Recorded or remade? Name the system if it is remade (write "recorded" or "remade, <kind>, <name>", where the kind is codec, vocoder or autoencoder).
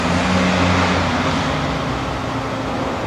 recorded